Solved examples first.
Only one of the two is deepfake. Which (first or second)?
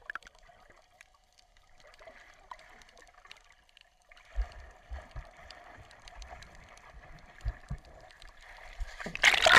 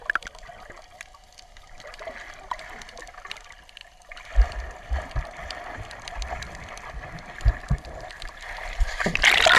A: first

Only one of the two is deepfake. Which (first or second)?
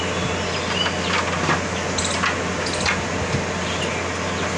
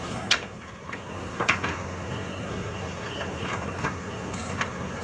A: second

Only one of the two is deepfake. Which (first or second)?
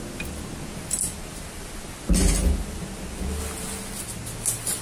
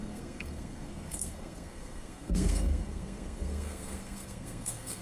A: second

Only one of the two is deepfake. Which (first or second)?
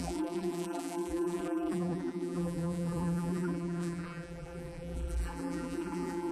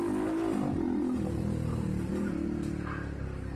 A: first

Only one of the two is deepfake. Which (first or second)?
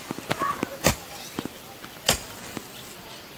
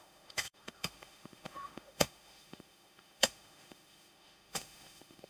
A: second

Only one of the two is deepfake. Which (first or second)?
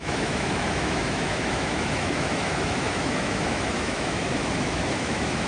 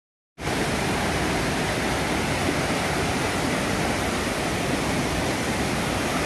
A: first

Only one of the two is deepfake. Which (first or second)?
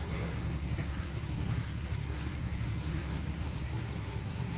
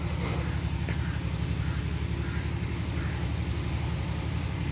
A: first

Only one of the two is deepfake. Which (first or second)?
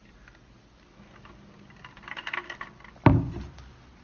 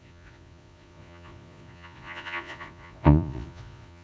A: second